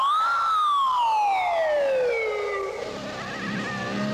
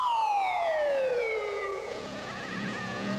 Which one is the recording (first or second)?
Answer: first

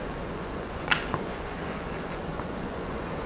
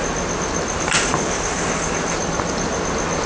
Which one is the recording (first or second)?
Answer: second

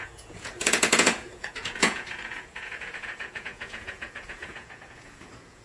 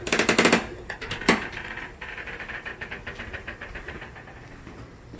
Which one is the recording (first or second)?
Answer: second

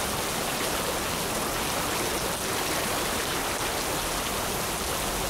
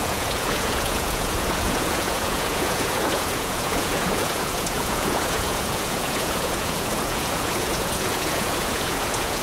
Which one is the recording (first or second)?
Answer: first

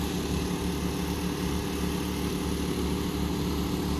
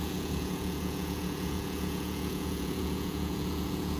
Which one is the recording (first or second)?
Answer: first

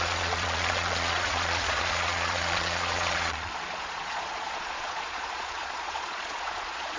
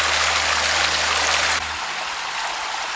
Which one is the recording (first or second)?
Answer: second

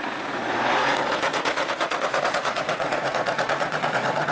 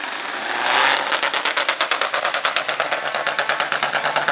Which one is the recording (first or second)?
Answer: second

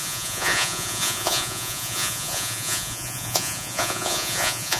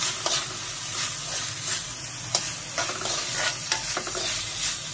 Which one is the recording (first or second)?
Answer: second